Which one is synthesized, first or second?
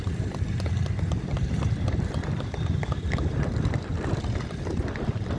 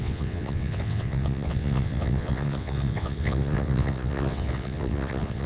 second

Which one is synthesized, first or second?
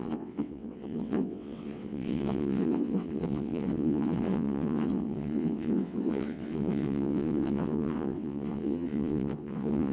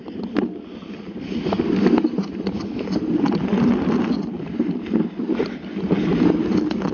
first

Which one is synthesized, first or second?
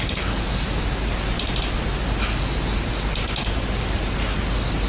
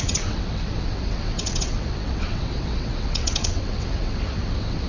second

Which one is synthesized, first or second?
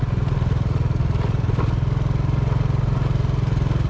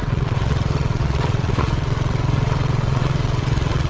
second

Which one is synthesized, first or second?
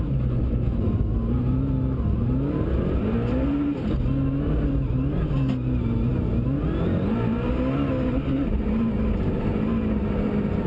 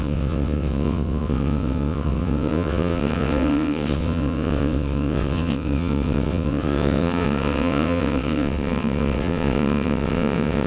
second